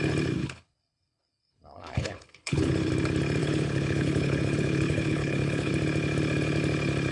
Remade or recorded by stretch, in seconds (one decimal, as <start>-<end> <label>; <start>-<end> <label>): 0.0-0.4 recorded; 0.4-2.9 remade; 2.9-3.4 recorded; 3.4-5.7 remade; 5.7-7.1 recorded